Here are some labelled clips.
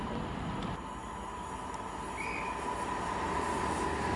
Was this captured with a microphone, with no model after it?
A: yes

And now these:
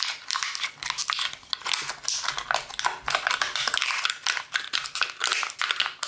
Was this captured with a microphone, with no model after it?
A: yes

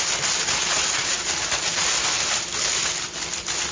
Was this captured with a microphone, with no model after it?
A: yes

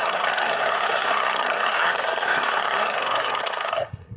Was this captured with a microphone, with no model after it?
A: no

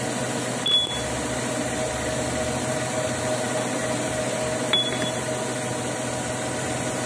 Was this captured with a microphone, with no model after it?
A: yes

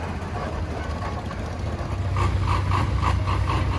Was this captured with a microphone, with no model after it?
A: yes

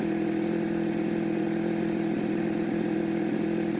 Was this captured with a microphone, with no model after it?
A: yes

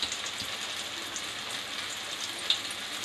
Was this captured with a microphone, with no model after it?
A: yes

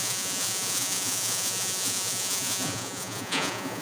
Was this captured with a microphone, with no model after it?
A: no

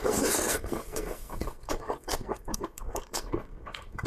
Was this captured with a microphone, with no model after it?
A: no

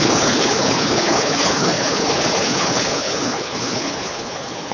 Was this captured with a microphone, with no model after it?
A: no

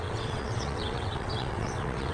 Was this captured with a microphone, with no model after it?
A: no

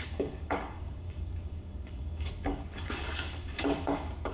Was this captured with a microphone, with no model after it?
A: no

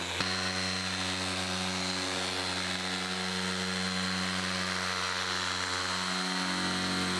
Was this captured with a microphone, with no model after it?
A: yes